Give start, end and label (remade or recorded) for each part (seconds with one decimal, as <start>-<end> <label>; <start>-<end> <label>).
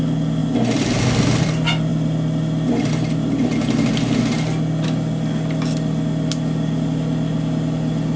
0.0-8.2 recorded